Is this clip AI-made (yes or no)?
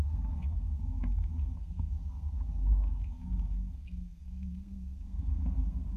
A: yes